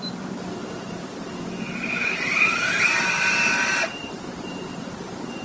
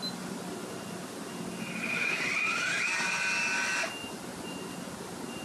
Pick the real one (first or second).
second